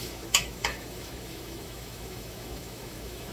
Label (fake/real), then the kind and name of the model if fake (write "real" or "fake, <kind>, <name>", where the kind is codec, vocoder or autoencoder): fake, autoencoder, DAC-VAE